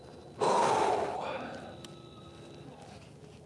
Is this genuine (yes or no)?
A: yes